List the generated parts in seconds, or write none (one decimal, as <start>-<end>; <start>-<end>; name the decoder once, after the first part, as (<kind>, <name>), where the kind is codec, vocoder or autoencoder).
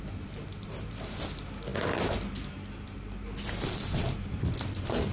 none